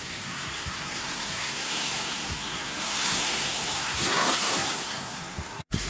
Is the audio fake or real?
fake